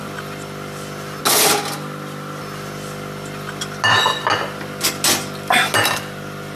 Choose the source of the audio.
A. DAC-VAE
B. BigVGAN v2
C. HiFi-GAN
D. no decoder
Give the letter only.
D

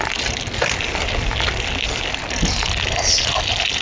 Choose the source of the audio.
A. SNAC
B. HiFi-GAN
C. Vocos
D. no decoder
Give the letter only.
D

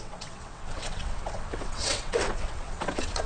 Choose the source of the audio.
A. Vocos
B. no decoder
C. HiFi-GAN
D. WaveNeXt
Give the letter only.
D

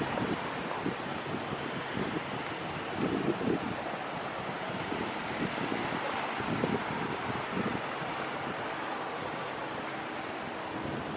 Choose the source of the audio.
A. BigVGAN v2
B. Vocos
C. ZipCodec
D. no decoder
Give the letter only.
D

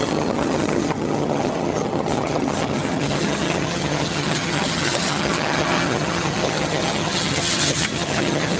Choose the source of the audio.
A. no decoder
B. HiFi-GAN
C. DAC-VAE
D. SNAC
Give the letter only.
B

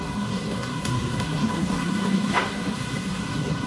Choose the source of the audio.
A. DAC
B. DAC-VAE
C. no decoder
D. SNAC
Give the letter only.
D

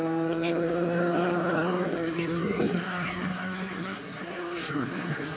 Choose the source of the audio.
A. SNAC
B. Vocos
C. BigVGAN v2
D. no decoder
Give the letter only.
A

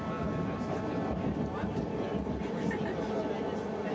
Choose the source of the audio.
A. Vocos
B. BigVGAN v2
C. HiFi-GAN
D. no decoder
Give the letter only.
D